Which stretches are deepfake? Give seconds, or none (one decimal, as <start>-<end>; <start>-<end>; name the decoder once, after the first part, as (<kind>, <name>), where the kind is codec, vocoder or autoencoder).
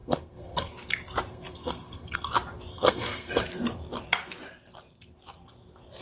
0.0-0.7 (codec, SNAC); 1.3-2.3; 2.7-3.3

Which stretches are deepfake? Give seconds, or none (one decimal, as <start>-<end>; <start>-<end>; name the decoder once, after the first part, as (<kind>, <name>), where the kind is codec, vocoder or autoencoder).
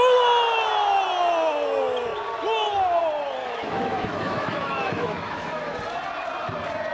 3.4-5.8 (autoencoder, DAC-VAE)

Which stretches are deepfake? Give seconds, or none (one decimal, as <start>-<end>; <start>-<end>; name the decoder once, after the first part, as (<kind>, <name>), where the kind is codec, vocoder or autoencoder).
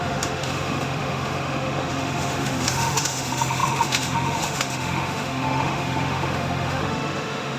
0.0-7.6 (autoencoder, DAC-VAE)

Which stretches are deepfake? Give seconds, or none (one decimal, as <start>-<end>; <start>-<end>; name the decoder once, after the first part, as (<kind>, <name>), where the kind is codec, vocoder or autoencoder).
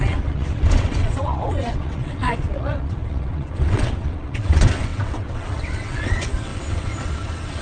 0.0-7.6 (vocoder, WaveNeXt)